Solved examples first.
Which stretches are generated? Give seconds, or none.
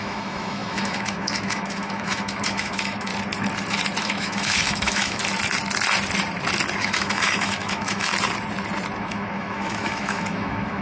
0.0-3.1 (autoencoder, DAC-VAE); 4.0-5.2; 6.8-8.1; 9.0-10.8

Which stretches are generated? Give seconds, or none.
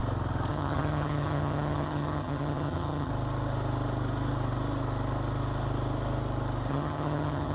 0.5-3.1 (vocoder, HiFi-GAN); 6.7-7.5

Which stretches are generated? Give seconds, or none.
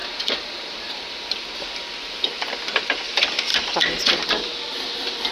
0.0-3.5 (vocoder, BigVGAN v2); 4.3-5.3